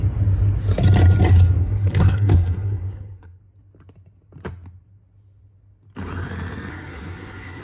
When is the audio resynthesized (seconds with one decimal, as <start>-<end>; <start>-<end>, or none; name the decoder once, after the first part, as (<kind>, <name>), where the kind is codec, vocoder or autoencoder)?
1.6-3.4 (codec, SNAC); 6.7-7.6